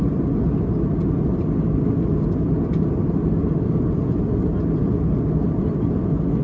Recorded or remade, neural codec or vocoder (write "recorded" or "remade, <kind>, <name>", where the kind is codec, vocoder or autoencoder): recorded